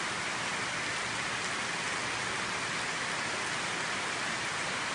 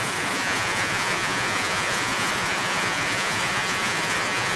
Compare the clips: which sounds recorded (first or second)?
first